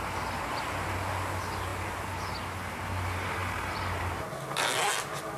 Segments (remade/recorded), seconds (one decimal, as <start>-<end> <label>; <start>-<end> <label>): 0.0-5.4 recorded

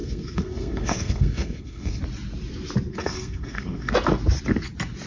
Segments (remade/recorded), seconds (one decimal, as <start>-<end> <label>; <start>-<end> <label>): 0.0-2.0 remade; 2.0-2.9 recorded; 2.9-3.9 remade; 3.9-5.1 recorded

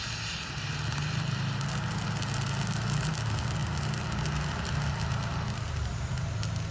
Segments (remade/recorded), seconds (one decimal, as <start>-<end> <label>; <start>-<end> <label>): 0.0-6.7 recorded

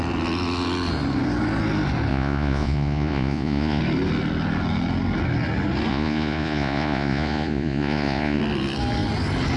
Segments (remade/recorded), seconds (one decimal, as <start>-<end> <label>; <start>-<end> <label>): 0.0-2.1 recorded; 2.1-3.8 remade; 3.8-5.9 recorded; 5.9-8.4 remade; 8.4-9.6 recorded

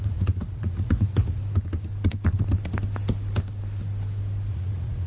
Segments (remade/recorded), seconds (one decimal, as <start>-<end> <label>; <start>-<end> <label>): 0.0-1.4 remade; 1.4-4.5 recorded; 4.5-5.1 remade